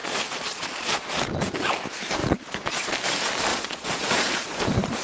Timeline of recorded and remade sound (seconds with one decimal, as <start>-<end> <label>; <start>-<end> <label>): 0.0-1.1 remade; 1.1-2.2 recorded; 2.2-2.9 remade; 2.9-3.5 recorded; 3.5-4.6 remade; 4.6-5.0 recorded